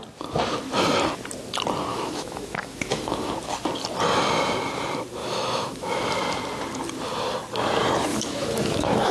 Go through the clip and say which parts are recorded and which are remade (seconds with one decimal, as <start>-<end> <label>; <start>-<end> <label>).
0.0-1.9 recorded; 1.9-3.3 remade; 3.3-5.2 recorded; 5.2-6.0 remade; 6.0-8.1 recorded; 8.1-9.1 remade